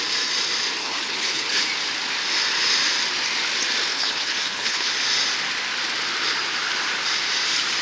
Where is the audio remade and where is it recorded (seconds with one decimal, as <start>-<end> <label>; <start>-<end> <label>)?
0.0-0.8 recorded; 0.8-1.6 remade; 1.6-3.9 recorded; 3.9-4.9 remade; 4.9-7.8 recorded